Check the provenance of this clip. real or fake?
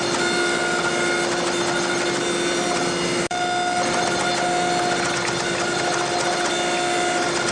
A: real